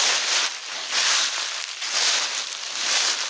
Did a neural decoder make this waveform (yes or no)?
no